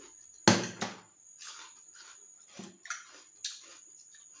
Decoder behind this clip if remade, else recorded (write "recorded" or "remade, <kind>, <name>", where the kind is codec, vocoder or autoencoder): recorded